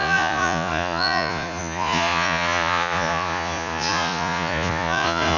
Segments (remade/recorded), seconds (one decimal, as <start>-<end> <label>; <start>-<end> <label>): 0.0-5.4 remade